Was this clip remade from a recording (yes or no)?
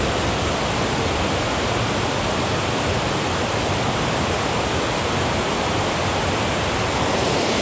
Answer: no